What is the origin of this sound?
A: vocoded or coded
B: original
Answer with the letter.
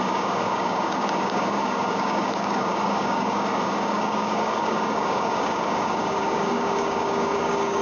A